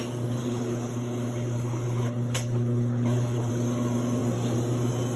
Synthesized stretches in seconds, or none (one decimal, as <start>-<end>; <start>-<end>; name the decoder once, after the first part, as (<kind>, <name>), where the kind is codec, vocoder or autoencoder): 0.4-3.5 (codec, HILCodec)